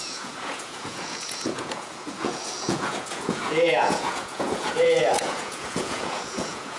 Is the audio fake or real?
fake